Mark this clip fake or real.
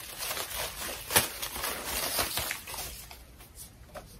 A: real